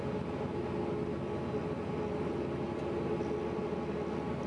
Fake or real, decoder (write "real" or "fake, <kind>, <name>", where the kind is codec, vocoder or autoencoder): real